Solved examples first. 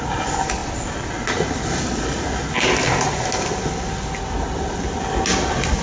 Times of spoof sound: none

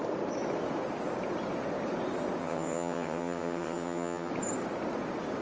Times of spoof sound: 2.4-4.3